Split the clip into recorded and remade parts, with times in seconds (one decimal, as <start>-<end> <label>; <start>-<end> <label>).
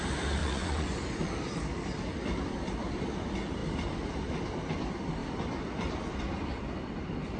0.0-0.4 recorded; 0.4-1.3 remade; 1.3-7.4 recorded